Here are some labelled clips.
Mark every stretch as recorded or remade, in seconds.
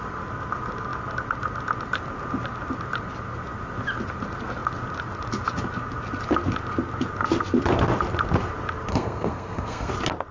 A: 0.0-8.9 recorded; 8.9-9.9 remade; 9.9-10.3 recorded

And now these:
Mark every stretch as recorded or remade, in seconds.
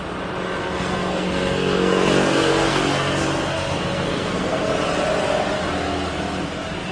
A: 0.0-0.6 recorded; 0.6-4.7 remade; 4.7-6.9 recorded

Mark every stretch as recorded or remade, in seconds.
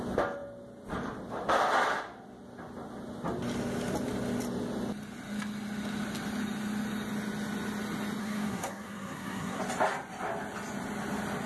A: 0.0-8.2 recorded; 8.2-9.6 remade; 9.6-11.5 recorded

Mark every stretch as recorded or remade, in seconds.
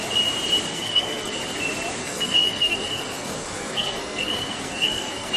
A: 0.0-0.7 recorded; 0.7-1.4 remade; 1.4-2.0 recorded; 2.0-5.4 remade